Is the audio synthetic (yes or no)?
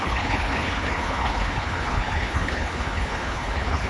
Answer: yes